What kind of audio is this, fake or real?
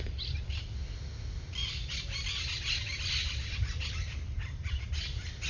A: real